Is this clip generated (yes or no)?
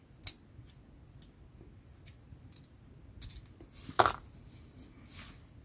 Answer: no